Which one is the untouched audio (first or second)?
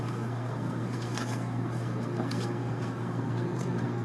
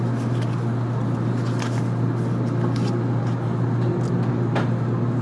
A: second